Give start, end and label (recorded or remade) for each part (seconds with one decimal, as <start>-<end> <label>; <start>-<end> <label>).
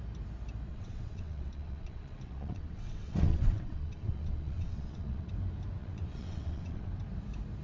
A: 0.0-0.7 recorded; 0.7-5.3 remade; 5.3-5.8 recorded; 5.8-6.9 remade; 6.9-7.6 recorded